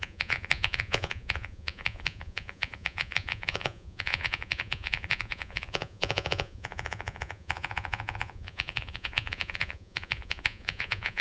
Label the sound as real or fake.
fake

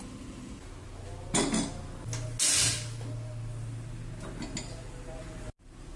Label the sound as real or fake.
real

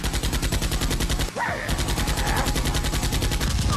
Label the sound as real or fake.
real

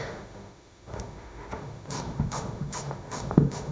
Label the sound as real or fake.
fake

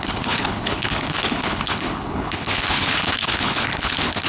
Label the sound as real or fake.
fake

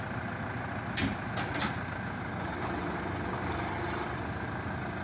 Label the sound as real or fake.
real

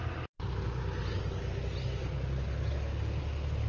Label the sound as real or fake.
real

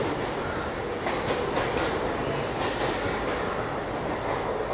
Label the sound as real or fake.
real